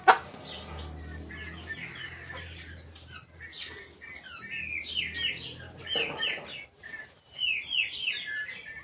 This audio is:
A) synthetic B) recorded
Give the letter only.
B